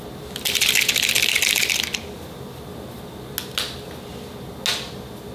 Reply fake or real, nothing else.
real